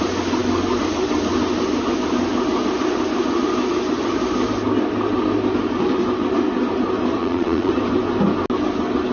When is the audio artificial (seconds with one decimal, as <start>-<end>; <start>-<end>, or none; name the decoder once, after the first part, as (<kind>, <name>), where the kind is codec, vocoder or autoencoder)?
7.2-7.7 (vocoder, Vocos)